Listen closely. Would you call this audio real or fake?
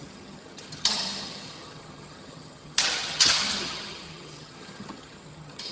fake